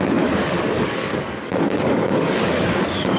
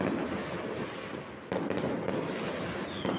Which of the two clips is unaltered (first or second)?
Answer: second